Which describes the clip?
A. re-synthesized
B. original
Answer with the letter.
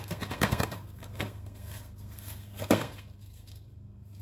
A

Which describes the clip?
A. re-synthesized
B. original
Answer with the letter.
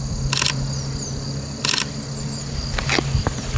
B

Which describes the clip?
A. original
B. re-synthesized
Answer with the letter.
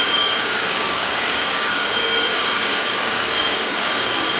B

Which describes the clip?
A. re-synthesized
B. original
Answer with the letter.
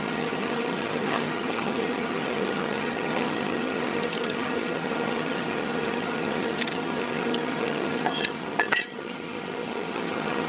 A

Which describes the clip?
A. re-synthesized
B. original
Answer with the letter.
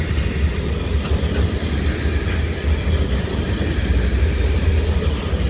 B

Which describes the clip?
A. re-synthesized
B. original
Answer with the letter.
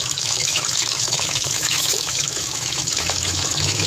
A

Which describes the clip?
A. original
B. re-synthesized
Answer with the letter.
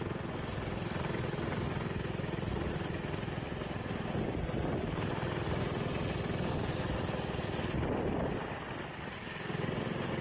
A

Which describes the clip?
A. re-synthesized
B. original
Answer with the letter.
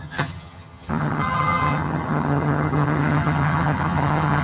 A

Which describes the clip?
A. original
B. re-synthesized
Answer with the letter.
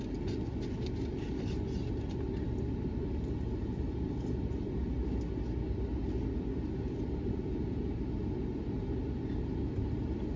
A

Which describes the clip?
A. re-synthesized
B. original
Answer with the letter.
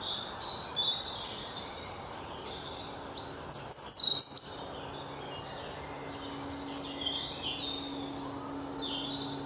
B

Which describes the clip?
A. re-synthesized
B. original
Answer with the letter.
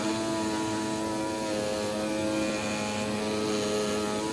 B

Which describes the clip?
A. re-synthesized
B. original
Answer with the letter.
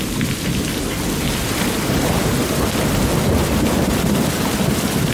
B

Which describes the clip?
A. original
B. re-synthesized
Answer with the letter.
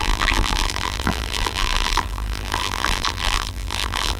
B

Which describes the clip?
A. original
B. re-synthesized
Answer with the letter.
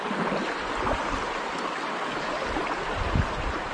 A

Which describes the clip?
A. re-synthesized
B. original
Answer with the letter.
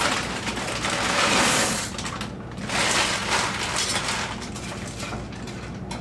B